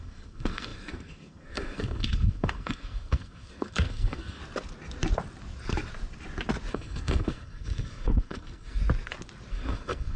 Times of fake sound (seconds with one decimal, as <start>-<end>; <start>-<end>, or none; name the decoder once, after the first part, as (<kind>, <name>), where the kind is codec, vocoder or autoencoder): 0.0-4.4 (codec, SNAC); 6.7-8.8; 9.5-10.2

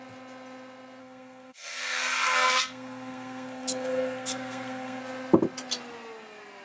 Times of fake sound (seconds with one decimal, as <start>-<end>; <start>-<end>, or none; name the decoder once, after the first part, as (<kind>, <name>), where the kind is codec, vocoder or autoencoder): 1.0-5.0 (codec, SNAC)

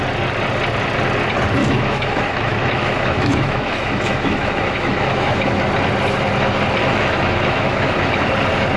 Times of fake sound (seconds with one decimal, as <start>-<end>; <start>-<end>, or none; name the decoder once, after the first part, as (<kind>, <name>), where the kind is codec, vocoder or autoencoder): 1.6-5.6 (autoencoder, DAC-VAE); 6.8-8.2

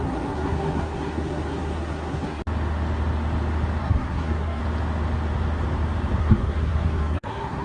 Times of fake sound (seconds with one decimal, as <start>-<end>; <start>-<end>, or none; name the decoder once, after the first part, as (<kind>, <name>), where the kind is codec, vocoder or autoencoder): 0.0-2.4 (codec, SNAC); 3.8-4.6; 6.2-7.6

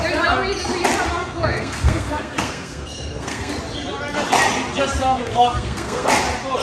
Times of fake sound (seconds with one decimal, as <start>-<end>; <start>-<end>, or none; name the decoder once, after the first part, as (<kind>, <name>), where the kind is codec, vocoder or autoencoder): 1.2-3.5 (codec, SNAC); 5.0-6.1

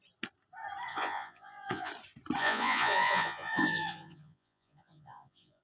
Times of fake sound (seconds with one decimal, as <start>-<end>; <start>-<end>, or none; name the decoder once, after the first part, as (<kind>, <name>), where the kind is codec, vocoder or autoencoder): 0.9-1.9 (vocoder, Vocos); 2.4-5.6